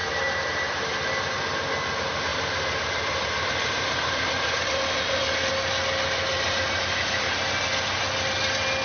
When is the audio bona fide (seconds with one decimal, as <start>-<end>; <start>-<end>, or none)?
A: 1.1-2.3; 5.5-6.3; 7.4-8.8